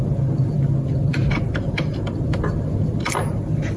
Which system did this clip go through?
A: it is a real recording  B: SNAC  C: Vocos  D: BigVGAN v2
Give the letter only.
D